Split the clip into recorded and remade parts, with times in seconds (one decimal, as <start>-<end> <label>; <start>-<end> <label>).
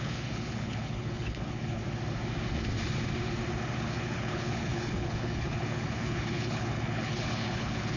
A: 0.0-1.8 remade; 1.8-3.8 recorded; 3.8-8.0 remade